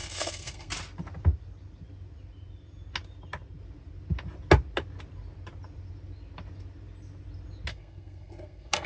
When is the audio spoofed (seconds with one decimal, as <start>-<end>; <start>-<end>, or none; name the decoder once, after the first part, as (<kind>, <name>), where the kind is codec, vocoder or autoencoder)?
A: 0.0-0.7 (codec, SNAC); 7.7-8.9